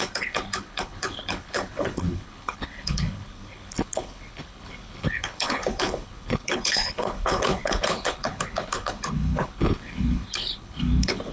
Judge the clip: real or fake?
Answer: fake